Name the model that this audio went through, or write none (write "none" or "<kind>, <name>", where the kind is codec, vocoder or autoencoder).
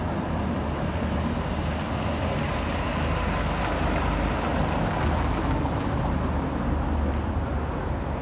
none